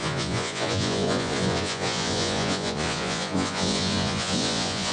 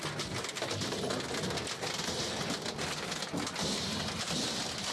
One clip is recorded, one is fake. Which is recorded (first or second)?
second